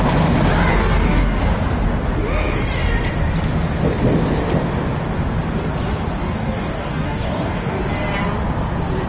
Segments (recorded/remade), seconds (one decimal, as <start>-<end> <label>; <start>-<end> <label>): 0.0-0.7 recorded; 0.7-1.4 remade; 1.4-6.2 recorded; 6.2-7.8 remade; 7.8-9.1 recorded